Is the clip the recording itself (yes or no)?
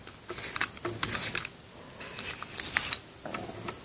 yes